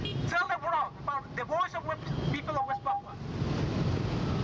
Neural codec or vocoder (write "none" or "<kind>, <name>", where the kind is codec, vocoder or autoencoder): none